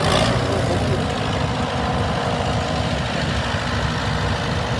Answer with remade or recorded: recorded